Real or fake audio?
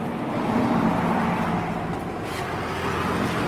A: real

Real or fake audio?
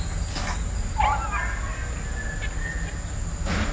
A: real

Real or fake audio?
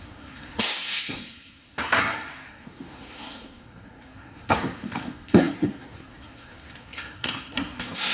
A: fake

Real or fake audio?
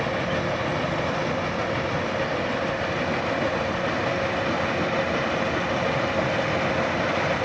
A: real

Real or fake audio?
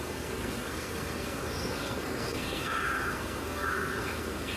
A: fake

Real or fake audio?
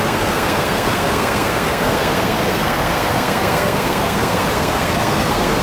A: fake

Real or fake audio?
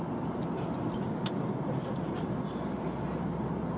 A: real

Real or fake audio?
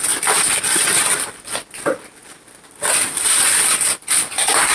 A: real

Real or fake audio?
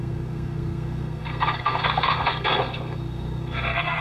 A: fake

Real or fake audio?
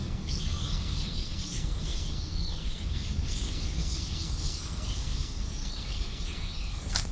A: fake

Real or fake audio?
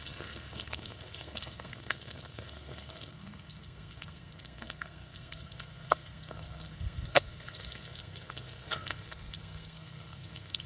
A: fake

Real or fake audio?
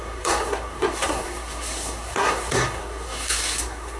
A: fake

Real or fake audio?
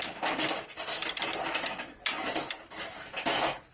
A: real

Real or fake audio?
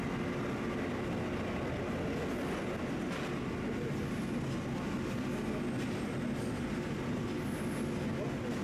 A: real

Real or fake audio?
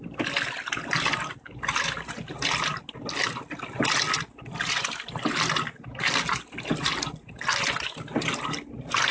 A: real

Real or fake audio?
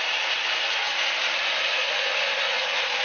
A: real